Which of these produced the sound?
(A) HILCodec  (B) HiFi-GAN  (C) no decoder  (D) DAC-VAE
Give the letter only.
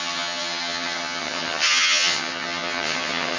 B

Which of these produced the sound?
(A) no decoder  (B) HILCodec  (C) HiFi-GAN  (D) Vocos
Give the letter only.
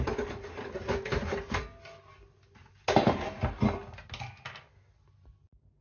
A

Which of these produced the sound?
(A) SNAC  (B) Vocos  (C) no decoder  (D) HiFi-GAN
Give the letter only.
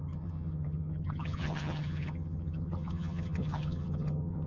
D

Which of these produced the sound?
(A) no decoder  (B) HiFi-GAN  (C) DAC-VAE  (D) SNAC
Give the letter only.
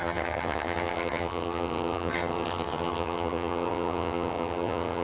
B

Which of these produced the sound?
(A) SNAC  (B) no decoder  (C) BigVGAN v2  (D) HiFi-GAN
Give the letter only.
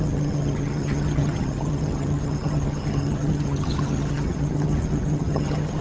D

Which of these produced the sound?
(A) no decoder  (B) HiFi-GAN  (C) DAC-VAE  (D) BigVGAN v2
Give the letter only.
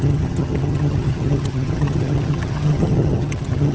B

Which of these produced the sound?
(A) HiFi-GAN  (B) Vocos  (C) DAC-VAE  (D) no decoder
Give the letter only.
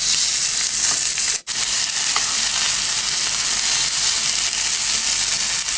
D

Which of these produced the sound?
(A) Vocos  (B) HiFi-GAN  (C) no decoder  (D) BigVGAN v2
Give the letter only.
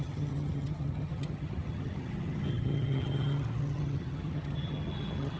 B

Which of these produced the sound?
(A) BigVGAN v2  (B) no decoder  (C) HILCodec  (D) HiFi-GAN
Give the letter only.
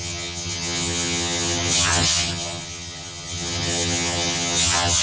D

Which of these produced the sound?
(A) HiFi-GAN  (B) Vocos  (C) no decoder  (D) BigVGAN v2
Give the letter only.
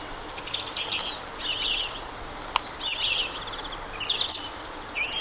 C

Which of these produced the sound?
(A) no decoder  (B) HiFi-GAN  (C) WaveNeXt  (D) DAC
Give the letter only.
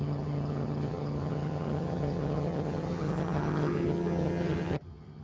B